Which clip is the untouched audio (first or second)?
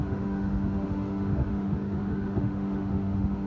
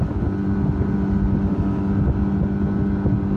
second